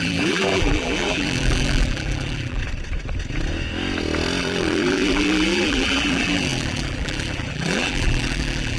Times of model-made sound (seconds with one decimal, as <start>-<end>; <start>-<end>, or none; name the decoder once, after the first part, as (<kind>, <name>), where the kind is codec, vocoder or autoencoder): 0.0-2.6 (vocoder, BigVGAN v2); 4.4-8.8